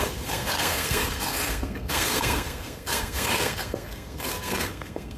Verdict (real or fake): fake